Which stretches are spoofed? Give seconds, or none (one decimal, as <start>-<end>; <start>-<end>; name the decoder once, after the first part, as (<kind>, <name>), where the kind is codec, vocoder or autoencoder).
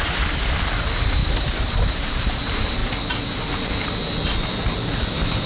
1.2-2.4 (vocoder, BigVGAN v2)